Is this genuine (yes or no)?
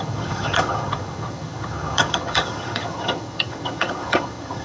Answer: no